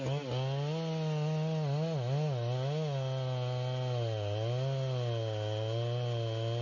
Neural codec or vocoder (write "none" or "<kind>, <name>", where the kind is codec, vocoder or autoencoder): none